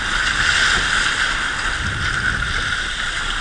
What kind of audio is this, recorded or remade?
recorded